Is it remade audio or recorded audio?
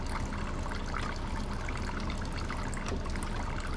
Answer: recorded